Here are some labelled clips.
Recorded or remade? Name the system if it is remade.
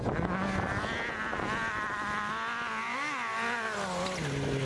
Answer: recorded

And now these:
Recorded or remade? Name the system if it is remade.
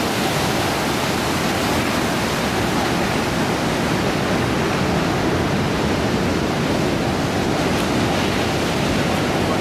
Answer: recorded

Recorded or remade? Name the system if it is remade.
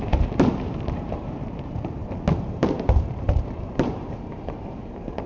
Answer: remade, vocoder, BigVGAN v2